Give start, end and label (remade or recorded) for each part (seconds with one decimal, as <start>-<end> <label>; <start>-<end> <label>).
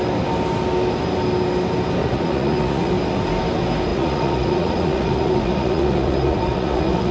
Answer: 0.0-2.0 recorded; 2.0-2.9 remade; 2.9-3.9 recorded; 3.9-7.1 remade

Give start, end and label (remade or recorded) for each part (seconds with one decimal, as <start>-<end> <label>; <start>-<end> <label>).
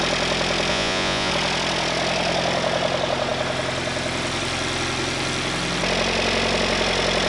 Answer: 0.0-0.7 recorded; 0.7-1.3 remade; 1.3-7.3 recorded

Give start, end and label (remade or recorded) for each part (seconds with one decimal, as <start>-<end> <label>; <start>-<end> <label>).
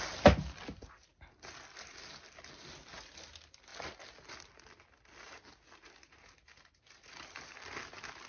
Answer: 0.0-8.3 recorded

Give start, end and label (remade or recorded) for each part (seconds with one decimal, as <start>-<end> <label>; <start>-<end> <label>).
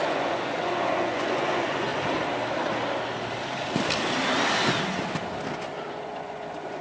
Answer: 0.0-1.9 remade; 1.9-5.9 recorded; 5.9-6.8 remade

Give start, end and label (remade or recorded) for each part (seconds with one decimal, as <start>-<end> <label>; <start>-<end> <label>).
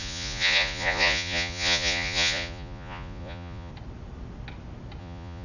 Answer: 0.0-3.7 remade; 3.7-5.0 recorded; 5.0-5.4 remade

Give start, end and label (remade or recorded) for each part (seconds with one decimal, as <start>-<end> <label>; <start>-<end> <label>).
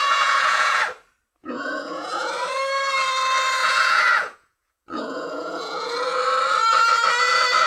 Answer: 0.0-0.8 remade; 0.8-1.4 recorded; 1.4-2.3 remade; 2.3-3.6 recorded; 3.6-6.2 remade; 6.2-7.7 recorded